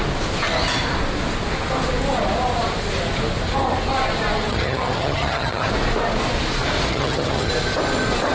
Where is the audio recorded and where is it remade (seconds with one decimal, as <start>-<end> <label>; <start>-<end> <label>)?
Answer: 0.0-4.5 recorded; 4.5-5.7 remade; 5.7-6.9 recorded; 6.9-7.5 remade; 7.5-8.3 recorded